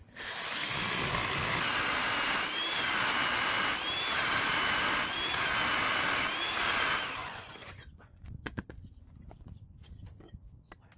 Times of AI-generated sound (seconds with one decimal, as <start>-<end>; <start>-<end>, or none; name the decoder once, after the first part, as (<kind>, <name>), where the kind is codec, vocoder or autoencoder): 7.2-10.2 (vocoder, Vocos)